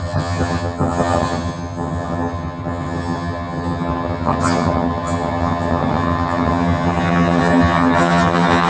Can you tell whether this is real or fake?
fake